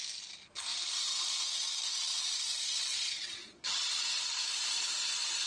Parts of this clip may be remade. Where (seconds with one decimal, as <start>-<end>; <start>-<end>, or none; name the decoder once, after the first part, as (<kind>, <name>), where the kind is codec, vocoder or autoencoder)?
0.7-1.3 (vocoder, Vocos); 2.1-5.5